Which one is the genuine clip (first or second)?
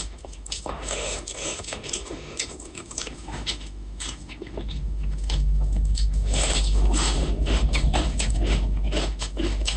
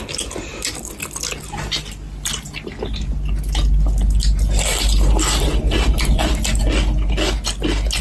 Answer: second